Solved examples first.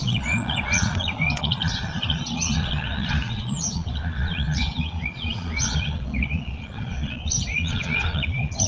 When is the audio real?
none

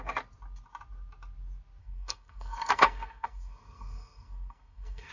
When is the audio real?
0.0-1.8

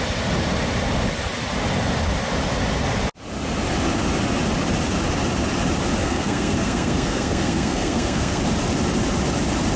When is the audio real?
0.0-6.0; 8.4-9.8

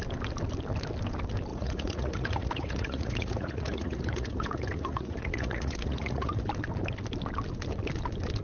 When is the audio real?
0.0-1.5; 6.4-8.4

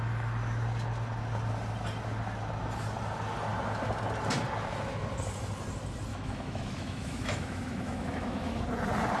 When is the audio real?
0.0-6.1; 8.6-9.2

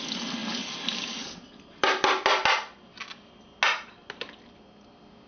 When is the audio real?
0.0-5.3

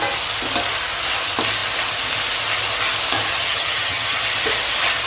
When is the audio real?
0.0-3.3; 4.2-5.1

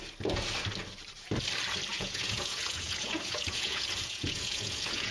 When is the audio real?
0.0-1.9